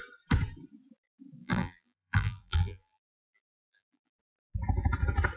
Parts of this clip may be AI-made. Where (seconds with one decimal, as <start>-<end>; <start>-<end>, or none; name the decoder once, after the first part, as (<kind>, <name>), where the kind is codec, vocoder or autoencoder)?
1.4-4.2 (vocoder, BigVGAN v2)